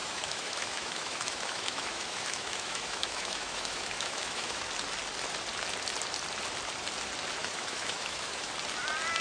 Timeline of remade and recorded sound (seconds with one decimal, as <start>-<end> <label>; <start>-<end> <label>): 0.0-4.6 remade; 4.6-7.4 recorded; 7.4-8.5 remade; 8.5-9.2 recorded